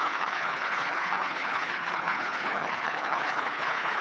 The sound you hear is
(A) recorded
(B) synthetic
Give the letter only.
B